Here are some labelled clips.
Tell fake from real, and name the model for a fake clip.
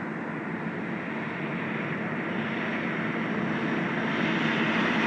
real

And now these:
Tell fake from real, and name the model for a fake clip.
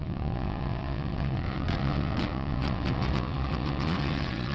fake, vocoder, WaveNeXt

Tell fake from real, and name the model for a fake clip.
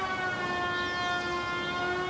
real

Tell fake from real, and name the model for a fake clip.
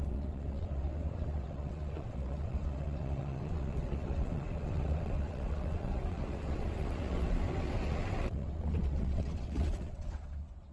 fake, vocoder, WaveNeXt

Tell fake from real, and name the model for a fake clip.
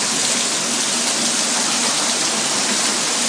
real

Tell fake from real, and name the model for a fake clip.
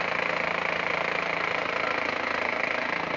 real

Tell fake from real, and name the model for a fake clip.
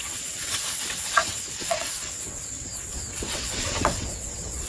fake, vocoder, WaveNeXt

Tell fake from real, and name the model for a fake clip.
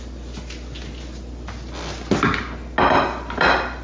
real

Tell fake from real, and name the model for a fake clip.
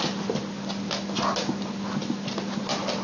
real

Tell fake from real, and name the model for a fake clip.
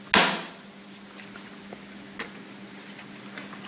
real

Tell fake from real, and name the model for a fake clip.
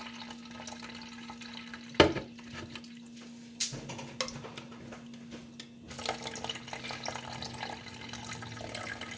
real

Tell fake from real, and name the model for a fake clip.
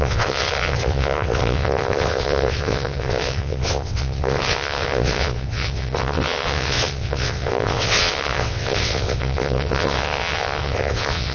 fake, vocoder, WaveNeXt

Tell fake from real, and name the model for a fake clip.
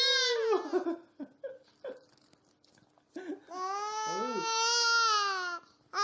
real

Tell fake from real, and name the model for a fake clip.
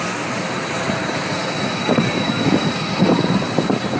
real